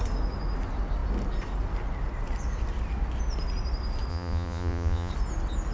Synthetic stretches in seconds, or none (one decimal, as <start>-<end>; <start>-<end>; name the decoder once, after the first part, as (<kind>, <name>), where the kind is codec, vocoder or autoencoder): 4.1-5.1 (vocoder, Vocos)